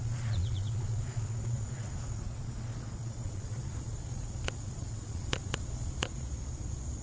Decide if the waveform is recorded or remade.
remade